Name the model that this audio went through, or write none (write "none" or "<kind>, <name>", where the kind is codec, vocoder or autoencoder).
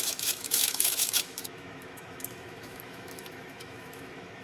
autoencoder, DAC-VAE